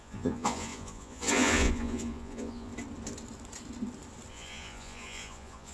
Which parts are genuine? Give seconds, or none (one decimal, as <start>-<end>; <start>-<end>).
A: 2.7-4.3